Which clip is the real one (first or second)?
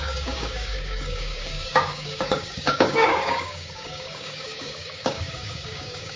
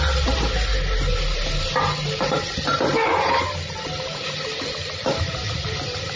second